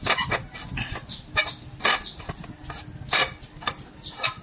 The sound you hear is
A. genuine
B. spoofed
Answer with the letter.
A